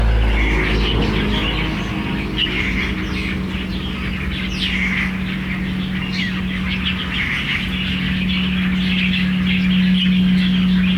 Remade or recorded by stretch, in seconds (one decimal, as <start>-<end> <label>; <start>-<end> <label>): 0.0-11.0 recorded